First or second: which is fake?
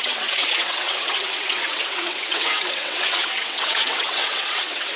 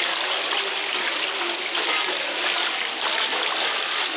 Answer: first